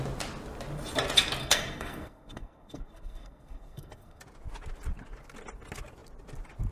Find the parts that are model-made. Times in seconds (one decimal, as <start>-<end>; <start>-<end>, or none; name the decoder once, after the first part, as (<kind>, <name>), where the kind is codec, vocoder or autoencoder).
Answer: 1.4-4.2 (codec, SNAC)